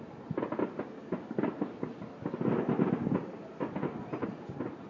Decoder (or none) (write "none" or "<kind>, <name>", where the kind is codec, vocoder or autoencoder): none